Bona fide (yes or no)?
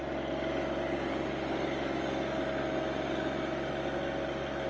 yes